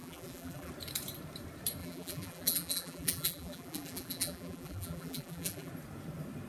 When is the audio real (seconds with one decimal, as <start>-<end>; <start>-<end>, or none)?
0.7-1.8; 5.7-6.5